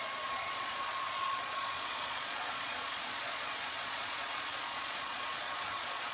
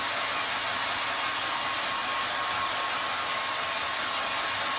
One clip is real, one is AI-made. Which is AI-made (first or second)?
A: first